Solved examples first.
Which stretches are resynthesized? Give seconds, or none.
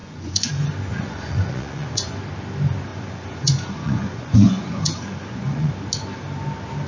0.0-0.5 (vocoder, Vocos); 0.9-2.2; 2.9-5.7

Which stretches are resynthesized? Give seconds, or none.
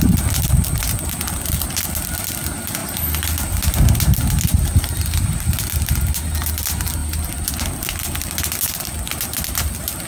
none